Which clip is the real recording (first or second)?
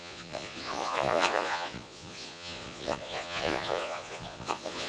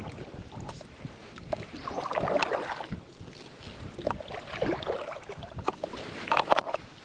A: second